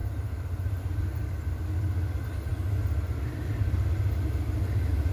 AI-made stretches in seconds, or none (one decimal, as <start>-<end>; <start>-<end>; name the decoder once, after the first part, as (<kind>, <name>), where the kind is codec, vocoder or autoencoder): none